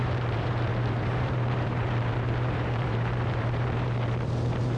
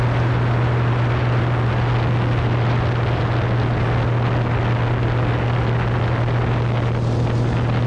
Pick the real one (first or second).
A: second